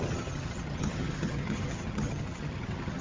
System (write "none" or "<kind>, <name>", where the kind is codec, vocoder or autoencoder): vocoder, HiFi-GAN